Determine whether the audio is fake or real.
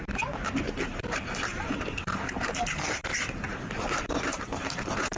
fake